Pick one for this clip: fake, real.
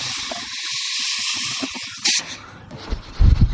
real